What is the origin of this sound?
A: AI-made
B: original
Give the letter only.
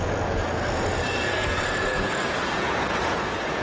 A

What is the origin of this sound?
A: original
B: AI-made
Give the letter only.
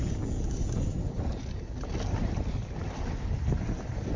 A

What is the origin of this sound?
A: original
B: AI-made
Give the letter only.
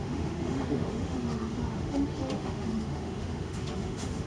B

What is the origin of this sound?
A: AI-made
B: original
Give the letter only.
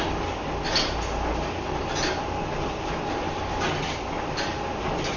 B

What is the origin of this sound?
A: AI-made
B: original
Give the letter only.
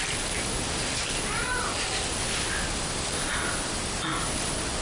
B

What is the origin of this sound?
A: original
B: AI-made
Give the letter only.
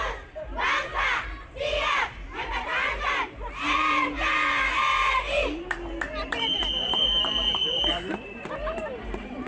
B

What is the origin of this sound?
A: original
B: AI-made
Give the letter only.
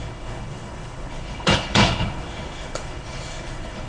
B